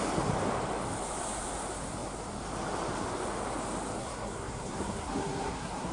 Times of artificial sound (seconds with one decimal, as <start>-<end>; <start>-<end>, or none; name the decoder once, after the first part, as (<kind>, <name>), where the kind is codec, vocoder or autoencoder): 4.0-5.9 (codec, SNAC)